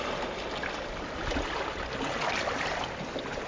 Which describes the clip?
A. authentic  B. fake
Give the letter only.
A